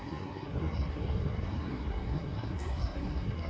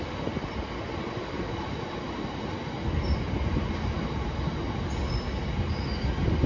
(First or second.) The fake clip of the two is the first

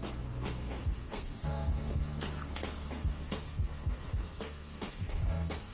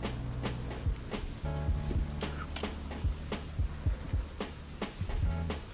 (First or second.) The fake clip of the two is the first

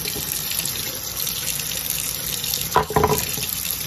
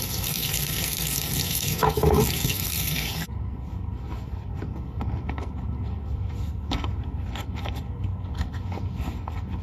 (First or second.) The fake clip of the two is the second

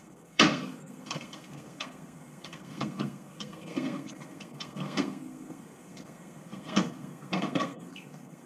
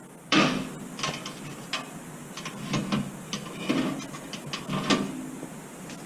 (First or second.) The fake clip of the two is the first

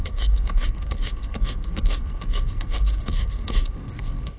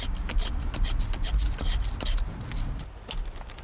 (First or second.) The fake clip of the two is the first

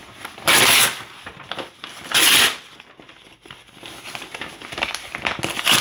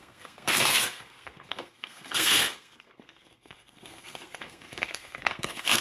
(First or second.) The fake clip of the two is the second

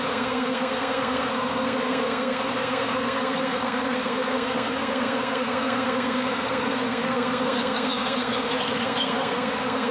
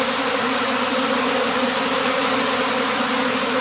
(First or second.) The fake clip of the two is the first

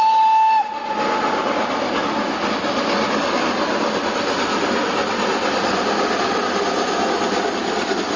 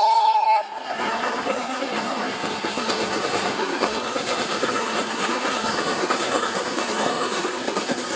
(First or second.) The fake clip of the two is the second